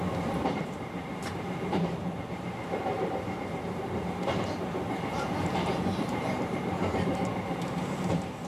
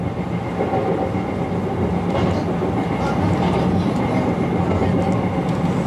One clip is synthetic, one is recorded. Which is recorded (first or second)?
second